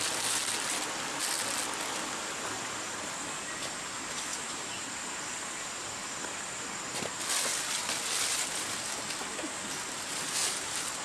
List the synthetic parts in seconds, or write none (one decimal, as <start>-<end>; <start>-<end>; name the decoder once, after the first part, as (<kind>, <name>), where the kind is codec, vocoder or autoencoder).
4.3-5.6 (vocoder, BigVGAN v2); 10.4-11.0